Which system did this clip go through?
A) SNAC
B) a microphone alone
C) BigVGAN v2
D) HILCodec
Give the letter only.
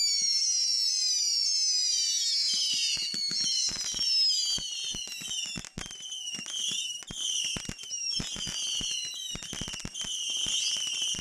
B